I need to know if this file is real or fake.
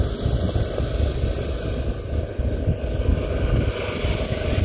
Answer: real